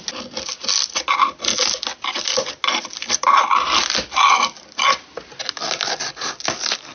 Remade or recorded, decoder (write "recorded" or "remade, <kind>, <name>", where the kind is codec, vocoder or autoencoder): recorded